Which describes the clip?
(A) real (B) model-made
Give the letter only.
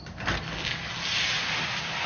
A